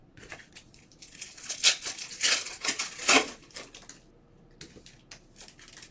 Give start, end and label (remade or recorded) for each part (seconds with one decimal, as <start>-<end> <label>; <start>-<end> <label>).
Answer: 0.0-3.5 remade; 3.5-5.9 recorded